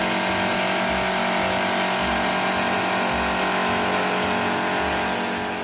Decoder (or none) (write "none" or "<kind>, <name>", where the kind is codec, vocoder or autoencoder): none